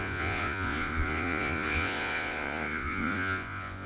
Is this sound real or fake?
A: fake